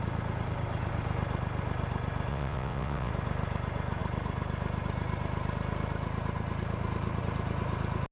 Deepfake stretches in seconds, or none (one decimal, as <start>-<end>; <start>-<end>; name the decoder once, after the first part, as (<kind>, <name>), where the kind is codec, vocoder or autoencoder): 2.3-3.1 (vocoder, WaveNeXt)